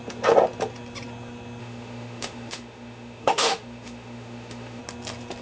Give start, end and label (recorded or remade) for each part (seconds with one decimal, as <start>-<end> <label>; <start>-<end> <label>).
0.0-1.6 recorded; 1.6-4.8 remade; 4.8-5.4 recorded

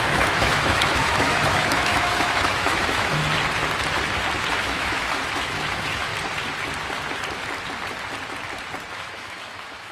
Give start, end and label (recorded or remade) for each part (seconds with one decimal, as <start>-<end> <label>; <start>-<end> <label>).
0.0-3.2 remade; 3.2-4.5 recorded; 4.5-6.1 remade; 6.1-8.9 recorded; 8.9-9.9 remade

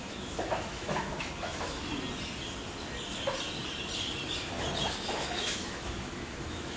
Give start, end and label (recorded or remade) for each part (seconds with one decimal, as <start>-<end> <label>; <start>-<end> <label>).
0.0-1.9 remade; 1.9-4.8 recorded; 4.8-6.8 remade